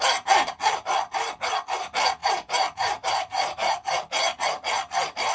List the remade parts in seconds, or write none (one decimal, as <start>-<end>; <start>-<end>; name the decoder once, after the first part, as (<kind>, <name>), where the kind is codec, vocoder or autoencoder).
2.2-4.5 (vocoder, BigVGAN v2)